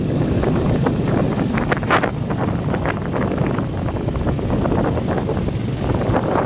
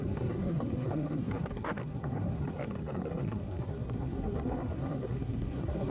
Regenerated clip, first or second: second